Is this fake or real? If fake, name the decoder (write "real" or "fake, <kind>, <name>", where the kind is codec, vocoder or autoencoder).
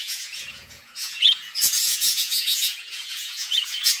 fake, vocoder, Vocos